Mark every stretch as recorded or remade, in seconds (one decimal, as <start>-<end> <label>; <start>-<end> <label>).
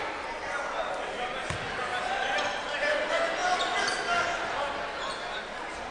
0.0-1.8 recorded; 1.8-3.0 remade; 3.0-5.9 recorded